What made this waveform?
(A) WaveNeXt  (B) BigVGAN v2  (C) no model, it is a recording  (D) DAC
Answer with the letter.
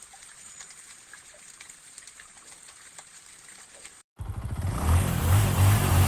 B